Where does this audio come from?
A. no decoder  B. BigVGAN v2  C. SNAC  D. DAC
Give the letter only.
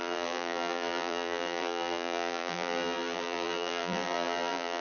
B